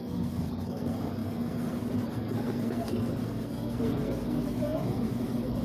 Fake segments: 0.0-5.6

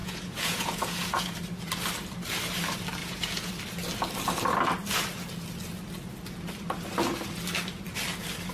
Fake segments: 0.0-1.4; 3.0-3.5

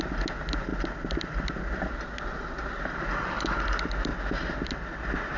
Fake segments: none

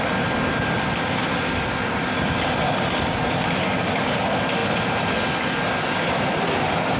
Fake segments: none

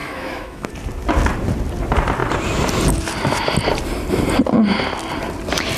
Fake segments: 0.0-0.7

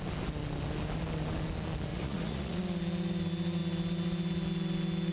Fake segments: 1.9-2.6

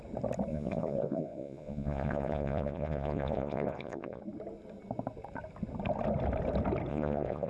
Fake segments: 0.5-4.2; 6.9-7.5

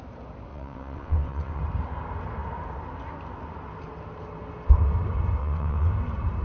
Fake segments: 0.5-1.6; 5.4-5.9